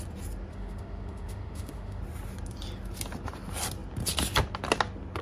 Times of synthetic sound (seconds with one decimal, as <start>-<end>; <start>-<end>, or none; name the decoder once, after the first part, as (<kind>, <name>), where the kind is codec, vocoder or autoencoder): 0.5-2.0 (autoencoder, DAC-VAE)